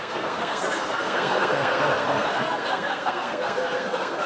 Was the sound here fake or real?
fake